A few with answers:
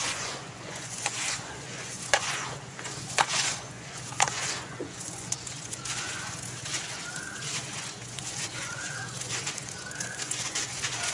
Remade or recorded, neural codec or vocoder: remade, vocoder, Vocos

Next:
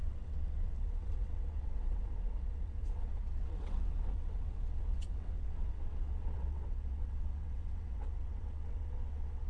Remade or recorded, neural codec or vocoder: remade, vocoder, WaveNeXt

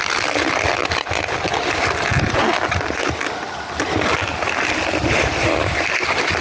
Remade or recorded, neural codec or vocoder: recorded